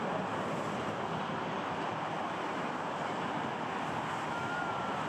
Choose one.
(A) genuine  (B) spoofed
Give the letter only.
A